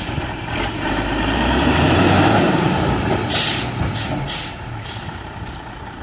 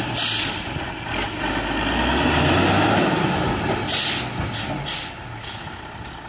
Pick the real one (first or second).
second